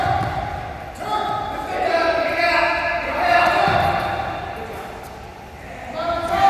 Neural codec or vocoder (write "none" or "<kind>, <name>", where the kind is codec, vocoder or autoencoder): none